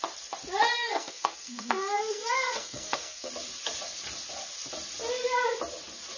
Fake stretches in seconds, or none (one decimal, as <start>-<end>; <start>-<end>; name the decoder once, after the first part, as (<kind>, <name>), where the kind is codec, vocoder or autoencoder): 0.8-3.3 (codec, SNAC)